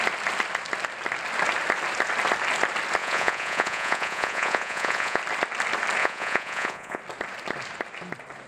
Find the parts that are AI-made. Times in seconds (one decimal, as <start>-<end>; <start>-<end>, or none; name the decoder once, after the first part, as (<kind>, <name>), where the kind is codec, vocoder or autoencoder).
3.0-5.2 (vocoder, Vocos); 6.0-7.0